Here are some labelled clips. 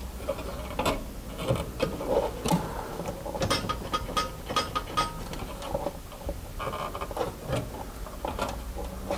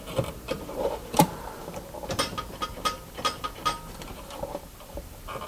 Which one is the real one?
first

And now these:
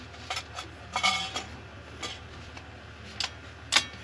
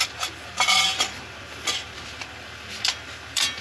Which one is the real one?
first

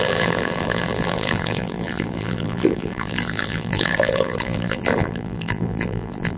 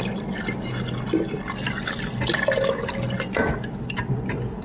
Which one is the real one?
second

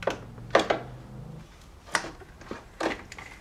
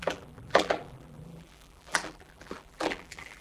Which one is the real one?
first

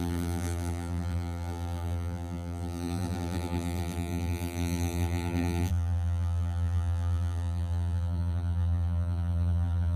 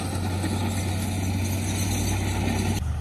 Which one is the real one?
second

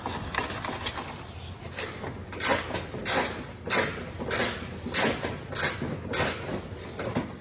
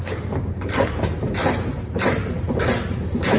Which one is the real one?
first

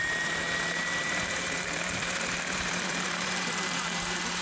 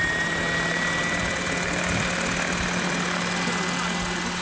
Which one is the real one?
second